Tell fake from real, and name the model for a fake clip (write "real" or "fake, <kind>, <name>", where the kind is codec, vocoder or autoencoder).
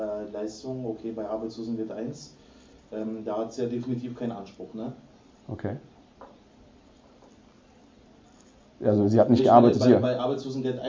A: real